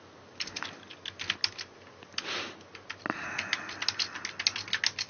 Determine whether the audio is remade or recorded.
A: recorded